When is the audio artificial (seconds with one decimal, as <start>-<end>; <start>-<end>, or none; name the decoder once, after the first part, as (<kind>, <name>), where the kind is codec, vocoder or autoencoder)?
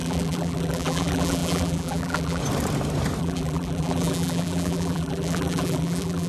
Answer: 0.0-2.4 (vocoder, BigVGAN v2); 3.2-6.3